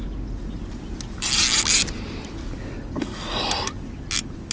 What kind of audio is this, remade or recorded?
recorded